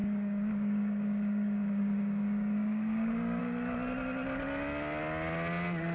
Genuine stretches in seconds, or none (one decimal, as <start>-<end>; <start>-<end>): 3.4-5.9